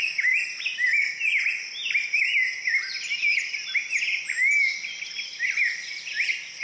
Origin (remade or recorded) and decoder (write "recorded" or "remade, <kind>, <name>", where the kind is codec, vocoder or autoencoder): recorded